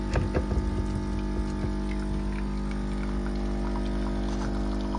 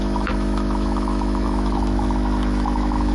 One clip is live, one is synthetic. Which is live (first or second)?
first